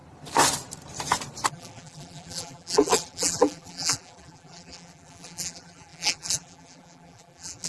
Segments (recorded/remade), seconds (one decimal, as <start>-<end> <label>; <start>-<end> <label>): 0.0-1.5 recorded; 1.5-7.7 remade